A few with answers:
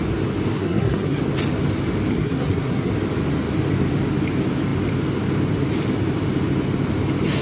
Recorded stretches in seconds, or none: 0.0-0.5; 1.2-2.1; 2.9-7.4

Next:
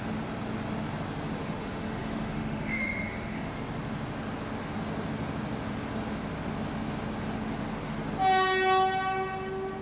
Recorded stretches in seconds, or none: 0.0-1.4; 3.5-9.8

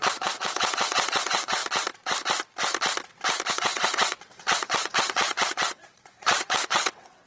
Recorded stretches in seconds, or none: 1.6-3.5

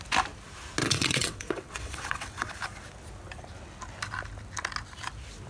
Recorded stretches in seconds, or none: 0.0-0.8; 2.5-5.5

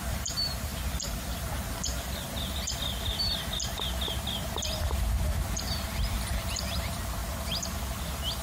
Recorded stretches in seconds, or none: none

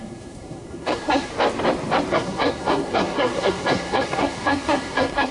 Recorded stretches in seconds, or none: 1.3-2.1